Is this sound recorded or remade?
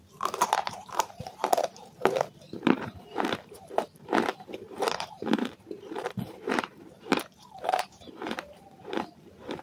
remade